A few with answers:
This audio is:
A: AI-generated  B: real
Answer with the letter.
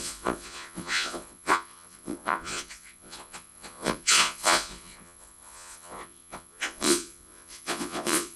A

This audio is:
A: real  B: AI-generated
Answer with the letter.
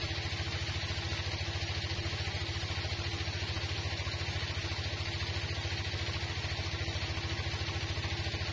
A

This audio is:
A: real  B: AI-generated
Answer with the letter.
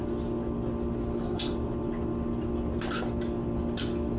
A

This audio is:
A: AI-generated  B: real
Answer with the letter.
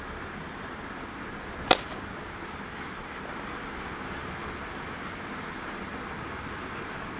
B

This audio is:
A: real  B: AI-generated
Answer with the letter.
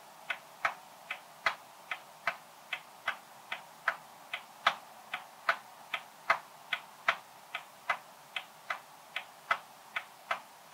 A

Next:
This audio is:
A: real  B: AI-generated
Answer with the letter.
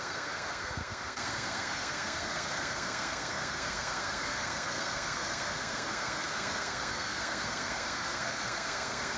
B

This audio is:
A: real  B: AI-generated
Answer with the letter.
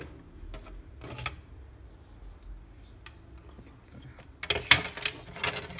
A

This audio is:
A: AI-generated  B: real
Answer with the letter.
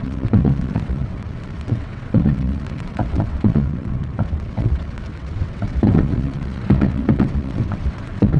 A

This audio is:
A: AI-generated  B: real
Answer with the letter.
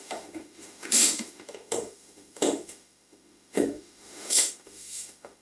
A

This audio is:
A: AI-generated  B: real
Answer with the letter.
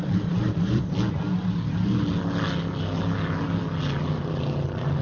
B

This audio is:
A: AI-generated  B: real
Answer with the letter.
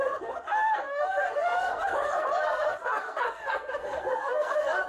A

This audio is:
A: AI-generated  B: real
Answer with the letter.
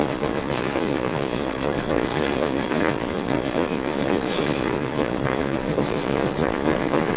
A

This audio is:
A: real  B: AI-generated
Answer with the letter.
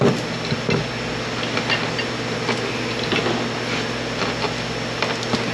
A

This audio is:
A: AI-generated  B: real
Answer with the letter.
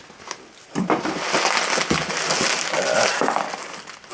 B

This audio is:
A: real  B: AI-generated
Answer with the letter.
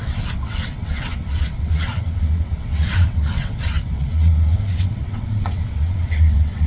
B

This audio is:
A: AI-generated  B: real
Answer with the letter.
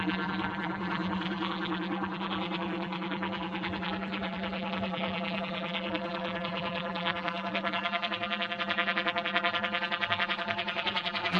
A